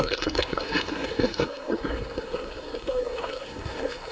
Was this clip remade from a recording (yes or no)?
yes